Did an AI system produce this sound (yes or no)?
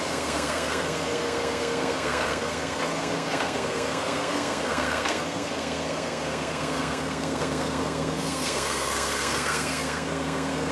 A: yes